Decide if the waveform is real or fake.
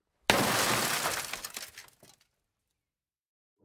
real